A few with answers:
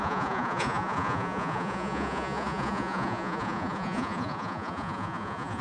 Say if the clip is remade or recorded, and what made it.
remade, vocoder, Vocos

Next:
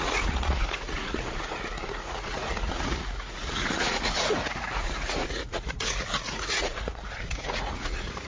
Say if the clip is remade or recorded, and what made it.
remade, vocoder, Vocos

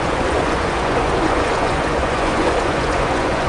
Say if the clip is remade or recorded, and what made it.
remade, vocoder, Vocos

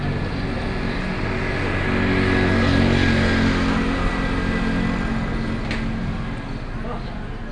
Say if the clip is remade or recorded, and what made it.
recorded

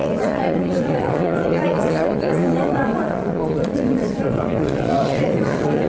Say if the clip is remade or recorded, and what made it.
remade, vocoder, Vocos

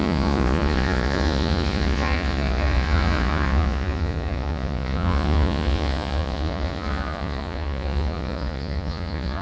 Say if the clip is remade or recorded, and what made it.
remade, vocoder, Vocos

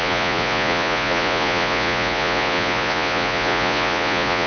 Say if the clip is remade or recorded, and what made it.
remade, vocoder, Vocos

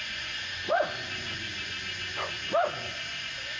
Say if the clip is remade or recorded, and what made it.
remade, vocoder, Vocos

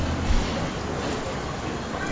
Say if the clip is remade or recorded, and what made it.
recorded